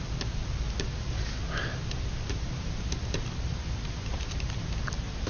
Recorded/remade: recorded